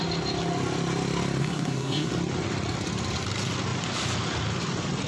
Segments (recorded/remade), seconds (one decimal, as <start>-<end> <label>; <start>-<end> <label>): 0.0-1.4 recorded; 1.4-2.1 remade; 2.1-5.1 recorded